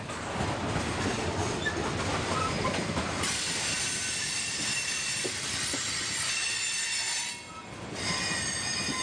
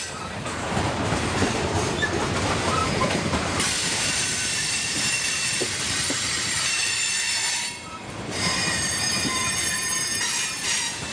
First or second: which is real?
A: first